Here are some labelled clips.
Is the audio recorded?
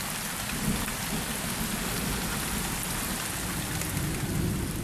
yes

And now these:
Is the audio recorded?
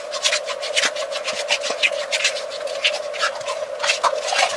yes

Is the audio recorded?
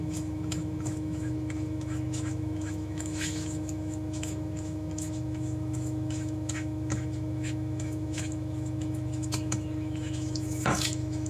no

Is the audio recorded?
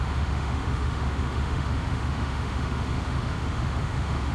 no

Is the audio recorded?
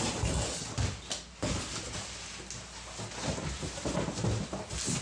yes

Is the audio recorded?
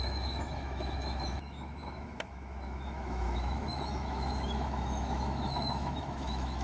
no